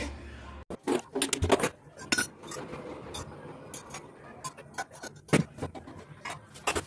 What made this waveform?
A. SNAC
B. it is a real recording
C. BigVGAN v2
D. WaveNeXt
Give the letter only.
B